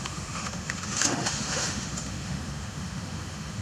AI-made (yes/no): yes